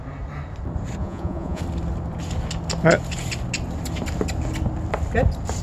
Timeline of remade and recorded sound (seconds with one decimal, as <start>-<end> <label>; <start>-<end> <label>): 0.0-1.0 recorded; 1.0-1.6 remade; 1.6-5.6 recorded